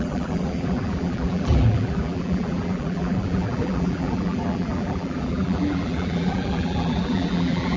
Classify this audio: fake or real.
fake